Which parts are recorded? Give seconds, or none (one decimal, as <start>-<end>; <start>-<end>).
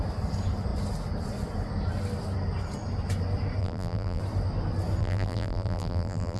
0.0-3.6; 4.2-5.0